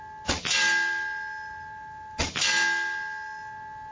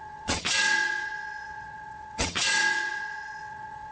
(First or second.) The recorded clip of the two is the first